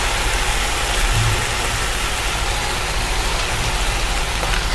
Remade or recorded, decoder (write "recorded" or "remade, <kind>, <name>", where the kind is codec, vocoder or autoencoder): recorded